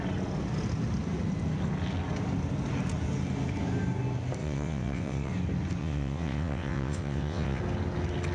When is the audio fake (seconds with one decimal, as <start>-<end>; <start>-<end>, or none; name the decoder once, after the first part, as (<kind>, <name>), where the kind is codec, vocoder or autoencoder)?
4.4-5.3 (vocoder, WaveNeXt); 5.8-7.6